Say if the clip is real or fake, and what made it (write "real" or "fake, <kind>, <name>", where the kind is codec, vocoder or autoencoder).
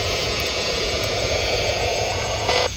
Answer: fake, vocoder, Vocos